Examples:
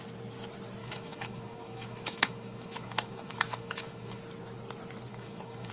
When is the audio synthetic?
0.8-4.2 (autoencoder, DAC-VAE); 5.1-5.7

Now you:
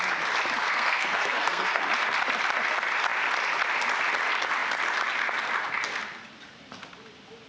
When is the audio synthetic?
0.7-1.8 (codec, SNAC)